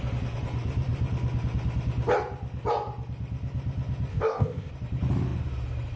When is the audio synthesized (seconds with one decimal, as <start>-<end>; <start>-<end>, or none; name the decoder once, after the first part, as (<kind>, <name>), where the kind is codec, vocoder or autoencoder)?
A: 4.1-4.7 (codec, ZipCodec)